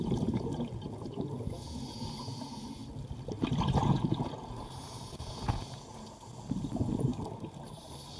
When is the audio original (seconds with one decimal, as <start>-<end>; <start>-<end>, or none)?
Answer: 2.8-3.6; 7.1-8.2